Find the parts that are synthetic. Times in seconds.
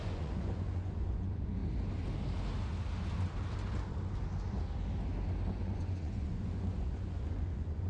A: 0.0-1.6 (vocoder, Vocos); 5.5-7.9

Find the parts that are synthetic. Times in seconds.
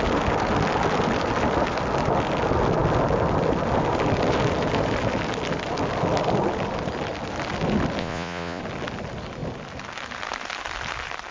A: 8.0-8.6 (vocoder, Vocos)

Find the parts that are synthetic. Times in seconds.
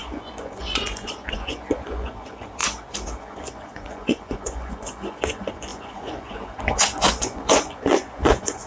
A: 0.0-2.6 (vocoder, Vocos); 3.2-8.7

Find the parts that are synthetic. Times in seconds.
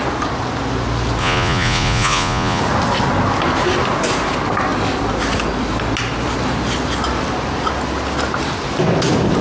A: 1.2-2.6 (vocoder, Vocos)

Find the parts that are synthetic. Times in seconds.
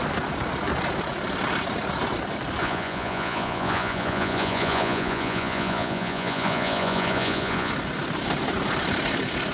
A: 2.6-7.7 (vocoder, Vocos)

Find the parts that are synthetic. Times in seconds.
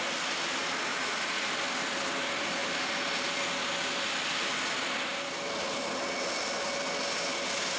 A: 0.9-1.5 (vocoder, Vocos)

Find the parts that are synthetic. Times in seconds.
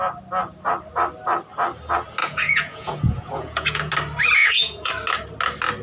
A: 2.2-3.9 (vocoder, Vocos); 4.4-4.9